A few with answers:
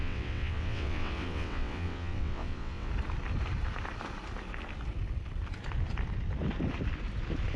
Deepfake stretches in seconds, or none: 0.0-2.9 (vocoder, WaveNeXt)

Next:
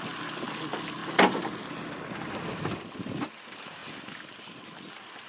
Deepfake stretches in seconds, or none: none

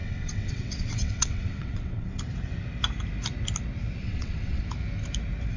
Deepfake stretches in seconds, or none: 0.0-2.2 (vocoder, WaveNeXt); 4.0-4.6